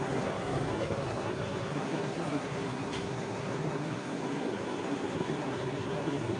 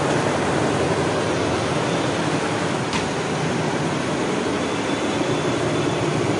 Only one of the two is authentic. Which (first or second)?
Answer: second